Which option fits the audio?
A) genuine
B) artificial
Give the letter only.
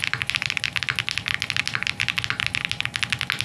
A